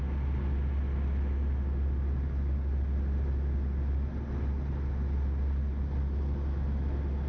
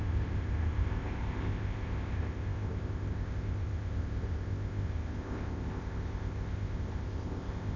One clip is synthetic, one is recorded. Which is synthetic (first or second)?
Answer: second